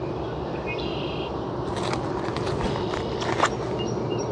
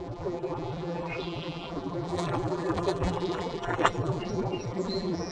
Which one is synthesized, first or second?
second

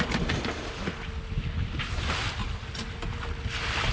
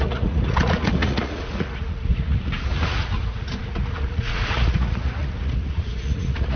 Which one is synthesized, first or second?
second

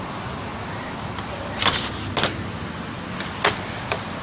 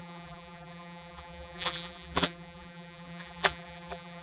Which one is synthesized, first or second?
second